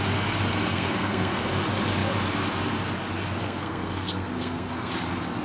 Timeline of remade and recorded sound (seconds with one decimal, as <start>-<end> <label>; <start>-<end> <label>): 0.0-0.5 recorded; 0.5-1.4 remade; 1.4-3.4 recorded; 3.4-4.9 remade; 4.9-5.4 recorded